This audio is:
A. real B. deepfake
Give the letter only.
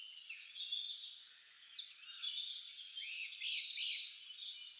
A